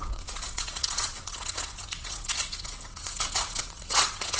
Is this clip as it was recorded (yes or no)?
no